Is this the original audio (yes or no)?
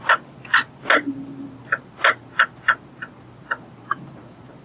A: yes